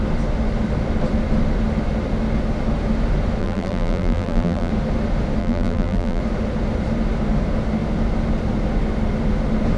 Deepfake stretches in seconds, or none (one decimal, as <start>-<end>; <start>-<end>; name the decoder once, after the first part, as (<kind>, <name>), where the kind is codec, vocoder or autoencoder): 3.4-4.7 (vocoder, BigVGAN v2); 5.4-6.2